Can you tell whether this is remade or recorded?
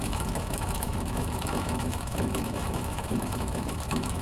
remade